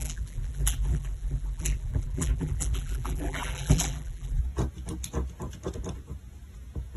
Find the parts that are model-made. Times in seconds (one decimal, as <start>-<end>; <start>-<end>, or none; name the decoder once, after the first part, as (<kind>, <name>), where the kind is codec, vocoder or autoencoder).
0.0-4.4 (vocoder, BigVGAN v2)